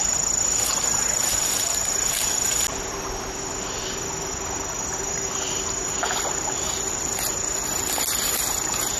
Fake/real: real